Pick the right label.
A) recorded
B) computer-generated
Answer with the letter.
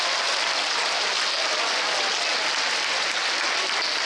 A